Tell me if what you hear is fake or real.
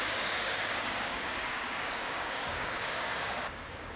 fake